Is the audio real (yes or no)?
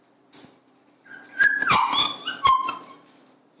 yes